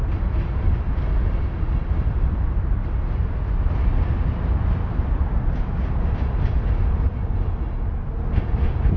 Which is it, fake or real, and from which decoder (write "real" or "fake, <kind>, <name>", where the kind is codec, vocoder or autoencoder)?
real